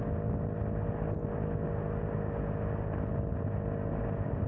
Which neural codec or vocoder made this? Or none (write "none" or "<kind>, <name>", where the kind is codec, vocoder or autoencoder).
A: none